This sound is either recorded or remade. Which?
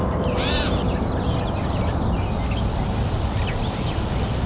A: recorded